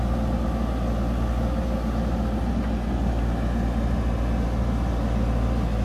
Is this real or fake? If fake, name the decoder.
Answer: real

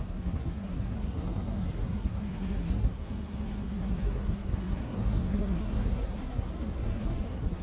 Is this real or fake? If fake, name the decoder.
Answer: fake, codec, SNAC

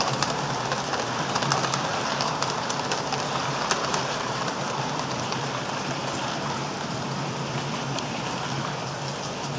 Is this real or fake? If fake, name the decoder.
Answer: fake, vocoder, BigVGAN v2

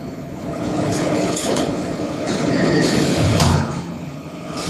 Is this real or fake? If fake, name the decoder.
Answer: fake, codec, HILCodec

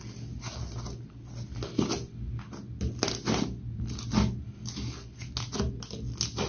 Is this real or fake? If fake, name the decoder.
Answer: real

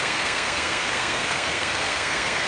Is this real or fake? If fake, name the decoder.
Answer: fake, codec, SNAC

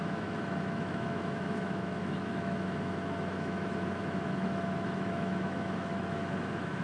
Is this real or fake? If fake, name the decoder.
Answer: fake, autoencoder, DAC-VAE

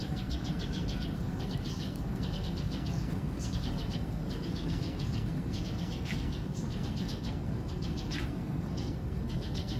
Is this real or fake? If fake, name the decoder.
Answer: fake, codec, SNAC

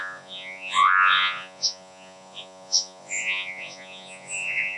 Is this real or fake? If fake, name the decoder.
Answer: fake, vocoder, Vocos